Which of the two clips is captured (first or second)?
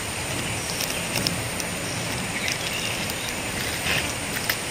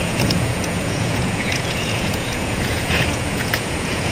first